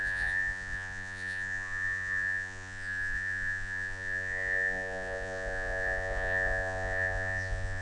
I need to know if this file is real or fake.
fake